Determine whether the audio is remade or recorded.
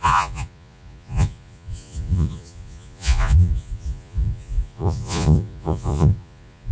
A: remade